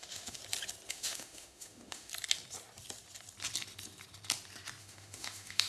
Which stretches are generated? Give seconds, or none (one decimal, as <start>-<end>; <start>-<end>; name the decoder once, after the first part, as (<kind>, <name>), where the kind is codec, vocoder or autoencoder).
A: 0.0-0.4 (autoencoder, DAC-VAE); 0.9-2.1; 4.8-5.7